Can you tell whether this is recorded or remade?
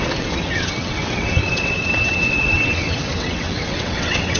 remade